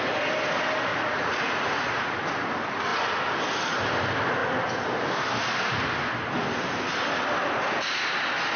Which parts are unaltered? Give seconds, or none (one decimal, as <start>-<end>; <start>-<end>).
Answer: 0.0-0.9; 2.1-8.6